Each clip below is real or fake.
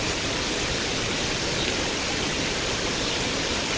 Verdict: real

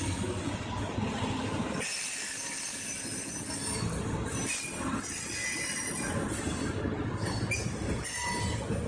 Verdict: real